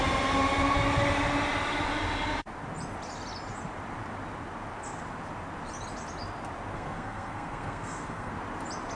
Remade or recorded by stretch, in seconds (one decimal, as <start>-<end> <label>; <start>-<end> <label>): 0.0-6.7 recorded; 6.7-8.3 remade; 8.3-9.0 recorded